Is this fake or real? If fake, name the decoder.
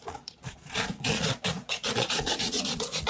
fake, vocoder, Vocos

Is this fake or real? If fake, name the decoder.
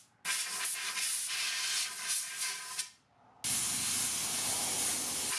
real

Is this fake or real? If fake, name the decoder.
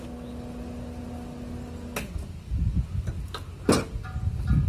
real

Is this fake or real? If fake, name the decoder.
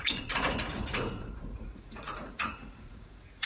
fake, vocoder, Vocos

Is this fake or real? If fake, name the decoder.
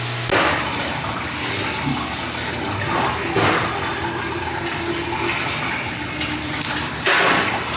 real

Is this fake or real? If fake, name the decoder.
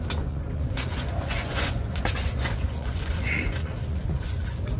fake, vocoder, Vocos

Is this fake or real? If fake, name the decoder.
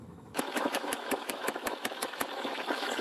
fake, autoencoder, DAC-VAE